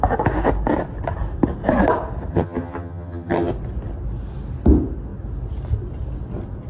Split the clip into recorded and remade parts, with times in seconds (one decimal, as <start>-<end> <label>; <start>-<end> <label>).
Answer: 0.0-2.3 recorded; 2.3-3.5 remade; 3.5-6.7 recorded